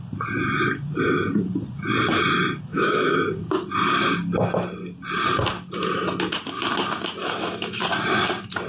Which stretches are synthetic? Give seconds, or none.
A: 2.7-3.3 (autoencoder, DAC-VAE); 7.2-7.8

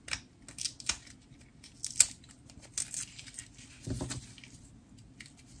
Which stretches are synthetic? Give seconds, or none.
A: none

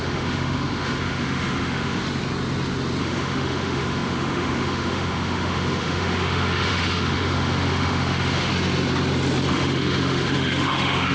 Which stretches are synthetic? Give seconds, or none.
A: 0.0-2.0 (autoencoder, DAC-VAE); 3.0-8.5; 9.5-11.1

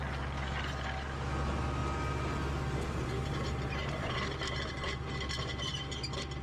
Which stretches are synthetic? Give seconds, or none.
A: none

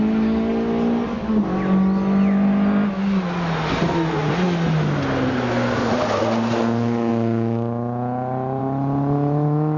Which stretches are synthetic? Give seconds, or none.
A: none

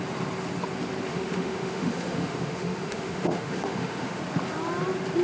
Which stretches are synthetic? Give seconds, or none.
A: 1.1-4.2 (autoencoder, DAC-VAE)